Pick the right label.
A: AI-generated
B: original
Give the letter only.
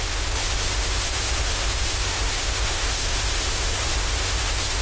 A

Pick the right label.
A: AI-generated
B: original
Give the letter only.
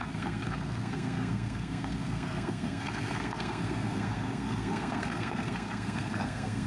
A